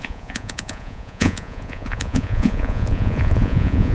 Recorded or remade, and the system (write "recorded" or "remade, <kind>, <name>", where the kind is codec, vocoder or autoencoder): remade, vocoder, Vocos